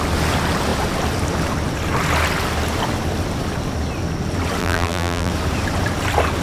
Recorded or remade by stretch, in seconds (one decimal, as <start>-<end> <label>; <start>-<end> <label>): 0.0-4.6 recorded; 4.6-5.3 remade; 5.3-6.4 recorded